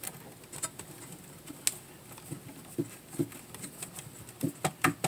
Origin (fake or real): real